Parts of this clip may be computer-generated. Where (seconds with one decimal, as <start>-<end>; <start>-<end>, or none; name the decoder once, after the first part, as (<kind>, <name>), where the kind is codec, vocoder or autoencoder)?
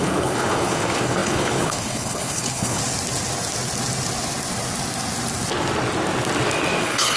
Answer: 0.0-2.8 (codec, HILCodec); 6.8-7.2